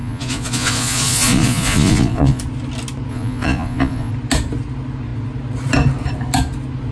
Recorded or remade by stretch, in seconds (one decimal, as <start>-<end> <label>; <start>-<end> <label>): 0.0-2.4 remade; 2.4-3.1 recorded; 3.1-4.1 remade; 4.1-6.9 recorded